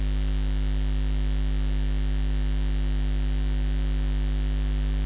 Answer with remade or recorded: recorded